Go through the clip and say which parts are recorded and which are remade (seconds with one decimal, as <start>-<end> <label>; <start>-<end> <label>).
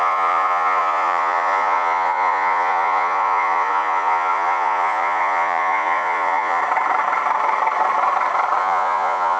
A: 0.0-6.6 remade; 6.6-8.6 recorded; 8.6-9.4 remade